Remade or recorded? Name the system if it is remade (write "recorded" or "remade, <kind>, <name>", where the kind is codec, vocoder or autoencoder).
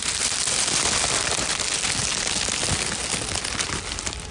recorded